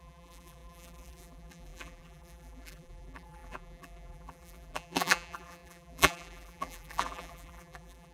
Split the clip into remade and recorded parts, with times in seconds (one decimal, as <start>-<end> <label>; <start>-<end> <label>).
0.0-8.1 remade